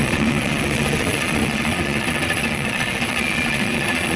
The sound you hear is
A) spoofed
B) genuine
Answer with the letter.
A